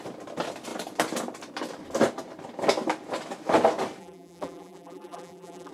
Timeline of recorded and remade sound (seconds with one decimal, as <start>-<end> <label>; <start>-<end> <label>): 0.0-4.0 recorded; 4.0-5.7 remade